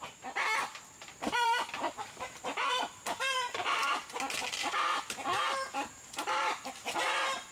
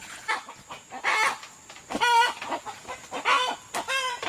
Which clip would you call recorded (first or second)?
second